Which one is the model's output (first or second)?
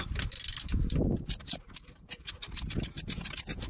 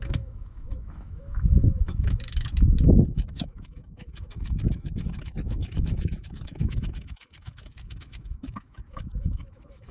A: second